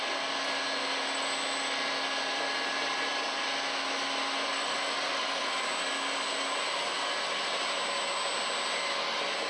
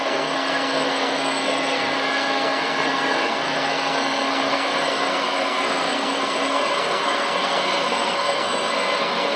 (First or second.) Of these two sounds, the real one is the first